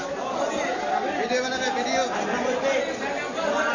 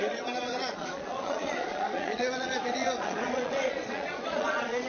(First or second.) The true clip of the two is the first